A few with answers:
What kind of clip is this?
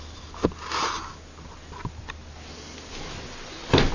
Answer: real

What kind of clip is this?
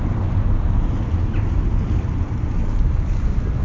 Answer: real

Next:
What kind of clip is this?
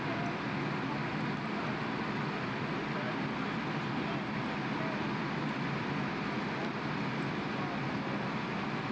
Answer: fake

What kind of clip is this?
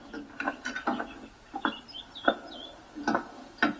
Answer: real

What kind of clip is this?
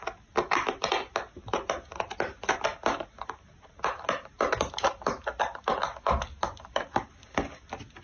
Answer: real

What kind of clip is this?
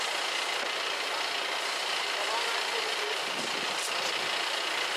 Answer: real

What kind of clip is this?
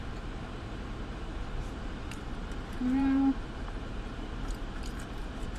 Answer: fake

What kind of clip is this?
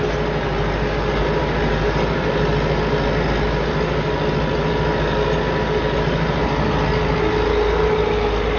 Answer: real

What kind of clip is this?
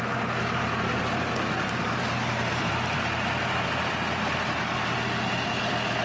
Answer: fake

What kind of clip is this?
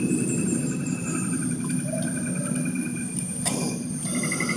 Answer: fake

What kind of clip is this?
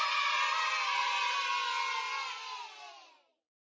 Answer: real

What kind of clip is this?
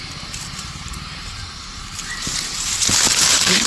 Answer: fake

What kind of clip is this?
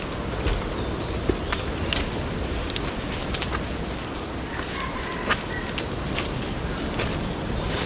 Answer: real